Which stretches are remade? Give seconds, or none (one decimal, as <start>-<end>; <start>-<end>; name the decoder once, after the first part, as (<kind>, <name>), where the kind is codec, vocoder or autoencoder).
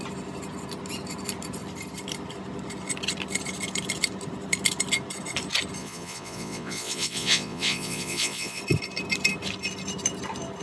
5.8-8.6 (vocoder, Vocos)